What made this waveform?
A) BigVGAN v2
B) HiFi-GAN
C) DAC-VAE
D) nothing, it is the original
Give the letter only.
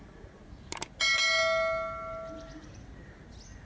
D